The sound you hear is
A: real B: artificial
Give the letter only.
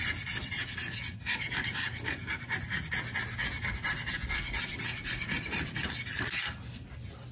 A